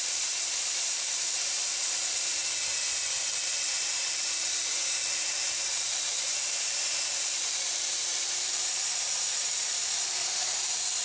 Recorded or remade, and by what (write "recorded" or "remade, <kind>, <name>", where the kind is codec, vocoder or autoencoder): remade, vocoder, BigVGAN v2